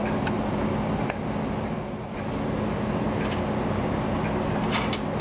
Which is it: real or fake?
real